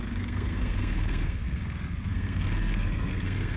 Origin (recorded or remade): remade